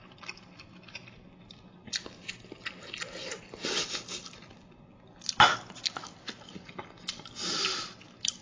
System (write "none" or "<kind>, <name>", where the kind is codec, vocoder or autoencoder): none